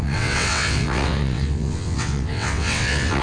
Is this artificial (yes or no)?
yes